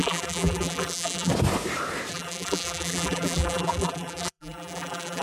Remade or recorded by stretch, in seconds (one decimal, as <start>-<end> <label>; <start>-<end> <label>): 0.0-1.3 remade; 1.3-2.1 recorded; 2.1-5.2 remade